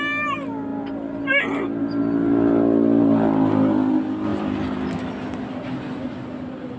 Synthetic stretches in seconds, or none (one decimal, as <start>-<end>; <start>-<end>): none